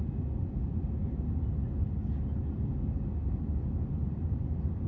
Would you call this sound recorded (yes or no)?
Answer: yes